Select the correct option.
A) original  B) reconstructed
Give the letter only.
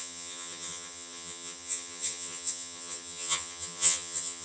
B